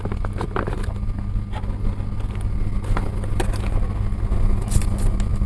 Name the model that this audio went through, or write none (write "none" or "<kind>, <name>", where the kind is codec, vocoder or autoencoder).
none